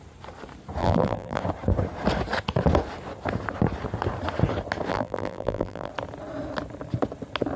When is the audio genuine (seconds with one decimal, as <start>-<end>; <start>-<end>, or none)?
0.0-0.8; 1.4-4.9; 5.9-7.6